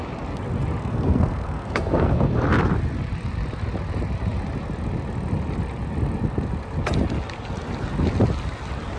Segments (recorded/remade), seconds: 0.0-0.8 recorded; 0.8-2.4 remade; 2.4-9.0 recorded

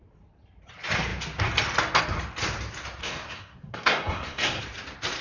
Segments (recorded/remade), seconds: 0.0-3.0 recorded; 3.0-4.6 remade; 4.6-5.2 recorded